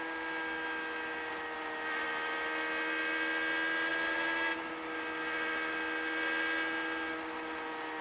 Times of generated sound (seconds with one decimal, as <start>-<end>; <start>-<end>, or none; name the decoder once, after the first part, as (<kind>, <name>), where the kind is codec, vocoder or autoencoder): none